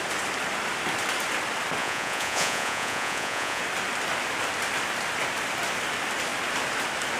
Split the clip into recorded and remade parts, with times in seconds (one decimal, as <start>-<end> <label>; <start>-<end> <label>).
0.0-1.8 recorded; 1.8-3.6 remade; 3.6-7.2 recorded